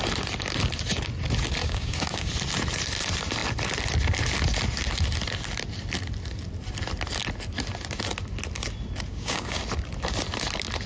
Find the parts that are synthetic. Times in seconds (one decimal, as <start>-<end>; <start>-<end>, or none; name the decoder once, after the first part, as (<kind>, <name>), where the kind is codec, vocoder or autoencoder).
1.6-2.3 (codec, DAC); 9.1-9.6